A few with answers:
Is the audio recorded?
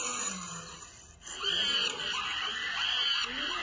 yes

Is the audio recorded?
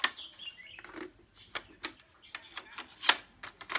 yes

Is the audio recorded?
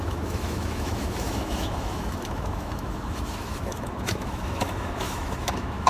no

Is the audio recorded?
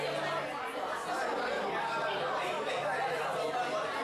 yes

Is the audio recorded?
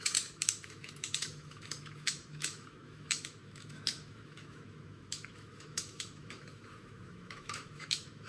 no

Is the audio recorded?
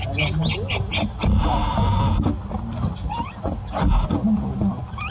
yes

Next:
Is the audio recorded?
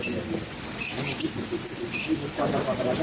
yes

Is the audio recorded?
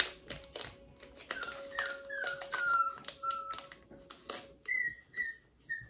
yes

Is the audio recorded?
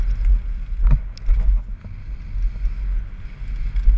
yes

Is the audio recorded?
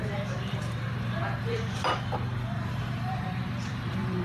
no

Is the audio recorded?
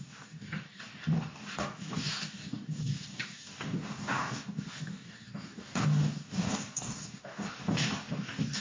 no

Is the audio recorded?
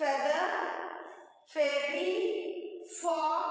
no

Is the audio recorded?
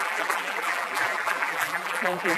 no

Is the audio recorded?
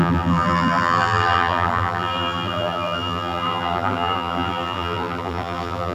no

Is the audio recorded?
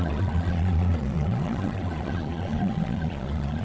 no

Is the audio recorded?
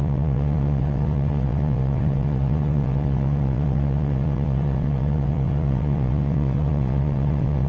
no